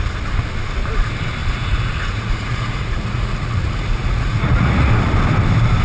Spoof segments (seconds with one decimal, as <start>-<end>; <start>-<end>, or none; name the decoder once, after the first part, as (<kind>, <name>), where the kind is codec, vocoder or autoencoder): 1.4-4.9 (vocoder, Vocos)